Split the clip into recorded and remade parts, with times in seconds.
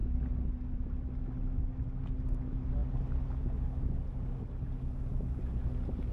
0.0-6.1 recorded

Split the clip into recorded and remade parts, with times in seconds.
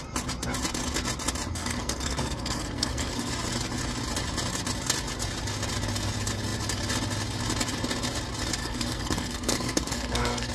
0.0-1.5 recorded; 1.5-3.3 remade; 3.3-8.6 recorded; 8.6-10.5 remade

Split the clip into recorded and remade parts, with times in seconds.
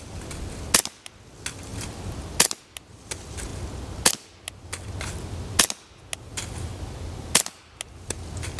0.0-8.6 recorded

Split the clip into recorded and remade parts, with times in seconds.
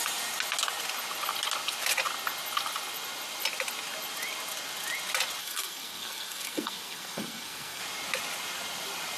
0.0-5.4 recorded; 5.4-7.8 remade; 7.8-9.2 recorded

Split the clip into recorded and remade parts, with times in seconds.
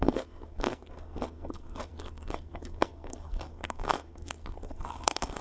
0.0-5.4 remade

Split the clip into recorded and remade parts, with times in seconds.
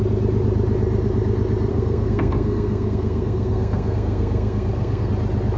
0.0-1.7 recorded; 1.7-5.1 remade; 5.1-5.6 recorded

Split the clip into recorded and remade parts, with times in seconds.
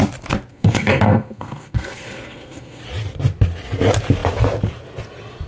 0.0-0.5 recorded; 0.5-2.8 remade; 2.8-5.5 recorded